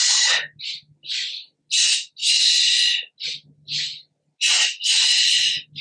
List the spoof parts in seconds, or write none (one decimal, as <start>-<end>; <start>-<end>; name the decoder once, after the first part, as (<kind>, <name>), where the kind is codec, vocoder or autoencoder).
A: none